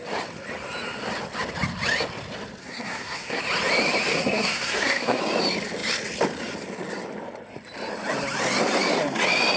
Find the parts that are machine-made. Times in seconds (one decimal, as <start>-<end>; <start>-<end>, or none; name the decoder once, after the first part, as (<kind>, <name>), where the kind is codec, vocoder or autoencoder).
2.6-3.4 (codec, SNAC); 4.1-5.2